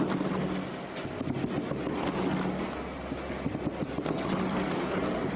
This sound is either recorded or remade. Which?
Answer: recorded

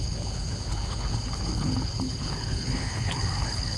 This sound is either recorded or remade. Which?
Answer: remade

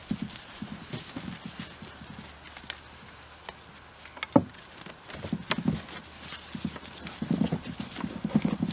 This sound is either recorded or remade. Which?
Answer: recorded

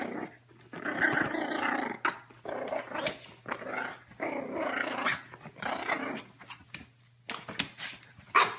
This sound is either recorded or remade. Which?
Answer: recorded